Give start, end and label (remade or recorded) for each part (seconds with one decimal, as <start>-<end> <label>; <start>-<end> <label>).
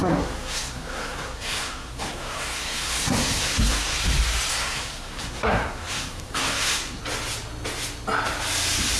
0.0-4.0 remade; 4.0-4.5 recorded; 4.5-7.0 remade; 7.0-9.0 recorded